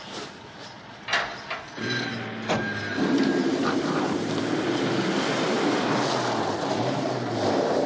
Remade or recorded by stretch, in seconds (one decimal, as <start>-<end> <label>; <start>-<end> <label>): 0.0-1.1 remade; 1.1-3.0 recorded; 3.0-7.9 remade